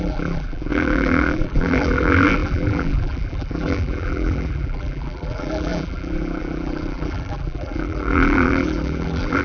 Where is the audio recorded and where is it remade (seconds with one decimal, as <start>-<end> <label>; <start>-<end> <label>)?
0.0-9.4 remade